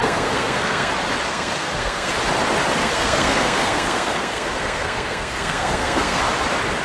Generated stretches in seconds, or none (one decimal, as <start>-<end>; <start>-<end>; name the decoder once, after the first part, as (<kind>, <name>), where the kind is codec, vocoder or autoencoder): 0.0-0.9 (codec, SNAC); 1.3-2.1; 2.8-6.2